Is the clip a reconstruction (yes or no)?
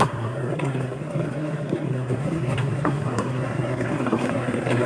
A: yes